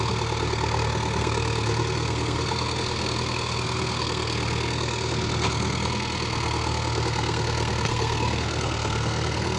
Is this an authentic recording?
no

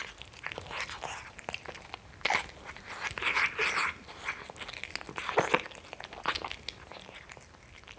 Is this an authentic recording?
yes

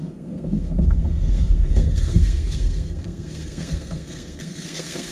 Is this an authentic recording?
no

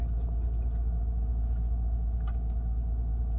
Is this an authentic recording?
yes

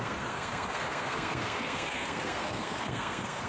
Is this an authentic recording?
no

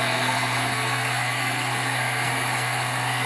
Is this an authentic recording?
no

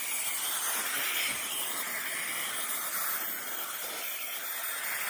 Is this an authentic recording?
yes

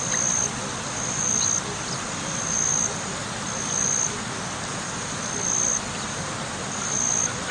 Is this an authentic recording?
yes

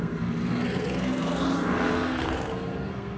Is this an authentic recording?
no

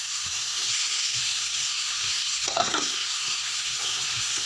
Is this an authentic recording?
no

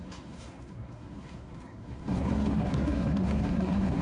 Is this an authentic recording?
no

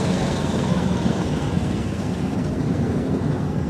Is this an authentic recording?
no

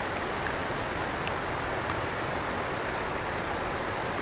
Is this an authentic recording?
yes